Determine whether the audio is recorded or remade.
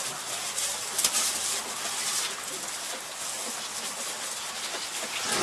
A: recorded